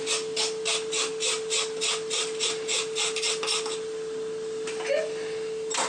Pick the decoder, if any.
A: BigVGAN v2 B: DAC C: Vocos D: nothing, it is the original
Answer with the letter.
D